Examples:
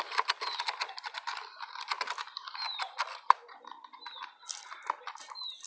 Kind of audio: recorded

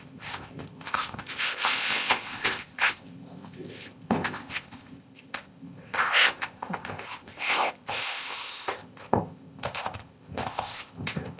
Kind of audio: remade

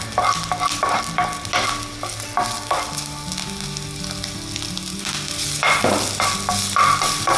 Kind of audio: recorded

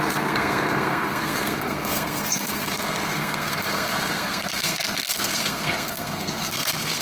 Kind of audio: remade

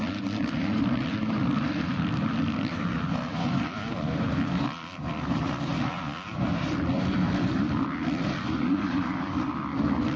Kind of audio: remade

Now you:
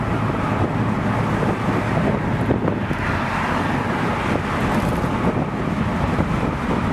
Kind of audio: recorded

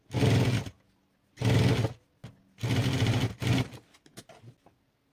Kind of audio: recorded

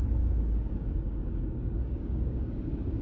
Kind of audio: remade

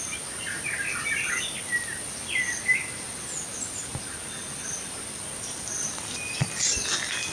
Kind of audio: recorded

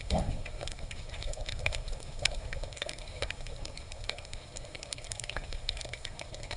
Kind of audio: remade